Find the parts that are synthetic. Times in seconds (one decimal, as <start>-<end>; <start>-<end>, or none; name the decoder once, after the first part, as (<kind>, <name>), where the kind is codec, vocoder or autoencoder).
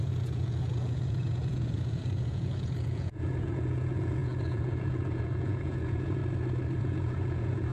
0.0-6.2 (vocoder, Vocos); 6.8-7.7